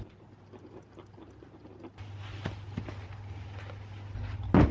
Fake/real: real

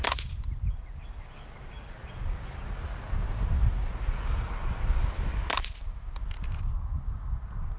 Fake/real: real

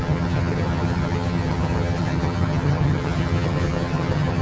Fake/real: fake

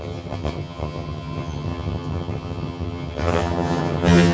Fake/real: fake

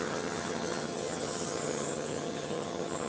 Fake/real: fake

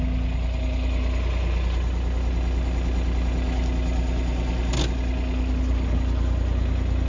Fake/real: real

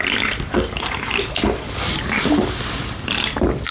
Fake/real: real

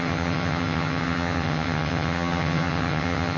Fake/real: fake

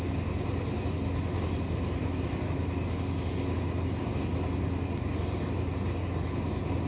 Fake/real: real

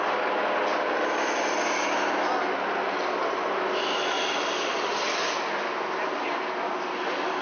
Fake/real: real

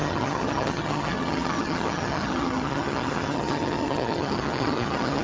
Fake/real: fake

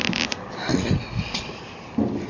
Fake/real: real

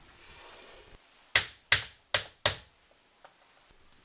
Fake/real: real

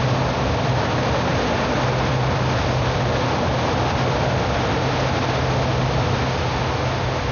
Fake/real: real